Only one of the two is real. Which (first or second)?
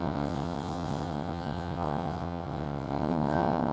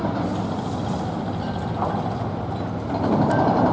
second